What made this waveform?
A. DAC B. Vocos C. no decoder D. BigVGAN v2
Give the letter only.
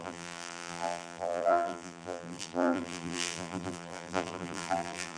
D